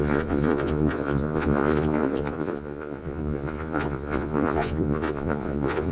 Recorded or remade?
remade